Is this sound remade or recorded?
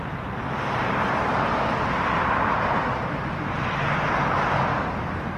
recorded